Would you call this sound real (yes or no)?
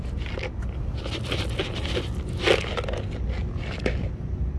yes